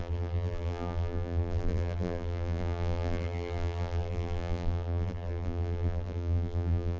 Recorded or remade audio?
remade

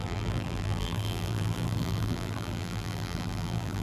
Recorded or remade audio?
remade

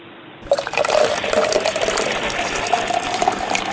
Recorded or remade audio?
remade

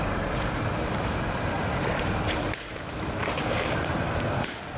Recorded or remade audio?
remade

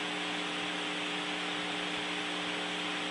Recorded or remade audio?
recorded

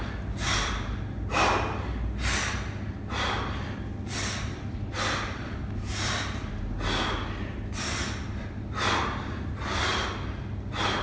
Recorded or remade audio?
recorded